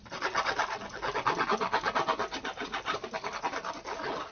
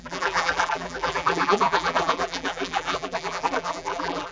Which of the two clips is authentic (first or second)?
first